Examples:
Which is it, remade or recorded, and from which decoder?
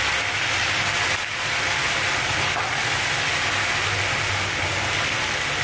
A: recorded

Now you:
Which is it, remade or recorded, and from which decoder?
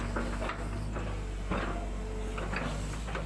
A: recorded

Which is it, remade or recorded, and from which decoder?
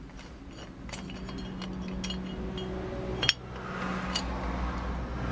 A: recorded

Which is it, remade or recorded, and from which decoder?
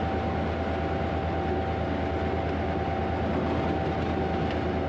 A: recorded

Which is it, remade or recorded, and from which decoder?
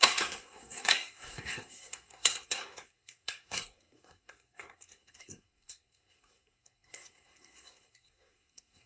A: remade, codec, SNAC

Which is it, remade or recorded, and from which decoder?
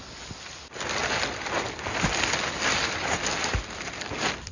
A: recorded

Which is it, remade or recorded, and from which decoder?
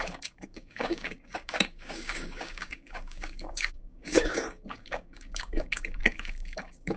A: remade, codec, DAC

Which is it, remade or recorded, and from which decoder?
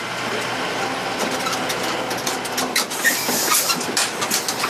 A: recorded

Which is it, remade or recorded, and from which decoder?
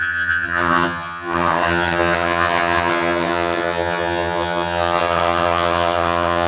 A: remade, vocoder, HiFi-GAN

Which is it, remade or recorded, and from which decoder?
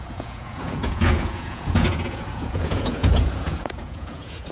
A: remade, vocoder, Vocos